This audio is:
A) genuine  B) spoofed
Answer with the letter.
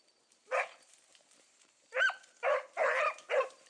B